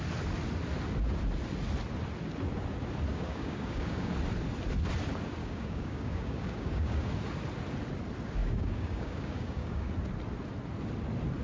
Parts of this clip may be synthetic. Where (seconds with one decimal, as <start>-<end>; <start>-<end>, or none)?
3.1-4.1; 5.4-7.1; 8.4-9.9